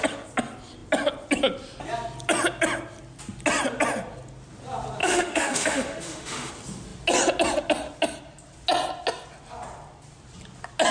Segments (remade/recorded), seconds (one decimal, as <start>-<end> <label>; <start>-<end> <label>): 0.0-5.0 recorded; 5.0-6.5 remade; 6.5-10.9 recorded